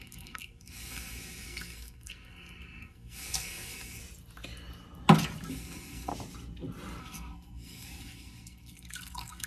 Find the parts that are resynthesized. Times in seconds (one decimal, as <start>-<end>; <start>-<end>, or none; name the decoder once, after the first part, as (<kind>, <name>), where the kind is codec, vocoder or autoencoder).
0.0-4.0 (codec, SNAC); 5.5-6.1; 7.0-9.5